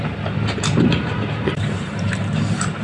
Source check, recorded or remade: remade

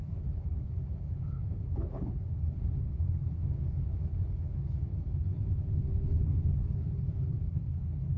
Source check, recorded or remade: remade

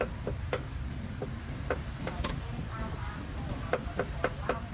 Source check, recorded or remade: remade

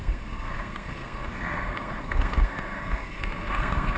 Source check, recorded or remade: remade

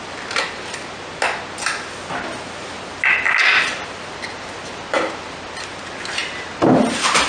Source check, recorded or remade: recorded